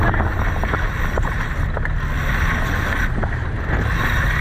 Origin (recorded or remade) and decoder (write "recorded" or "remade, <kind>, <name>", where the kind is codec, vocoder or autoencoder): recorded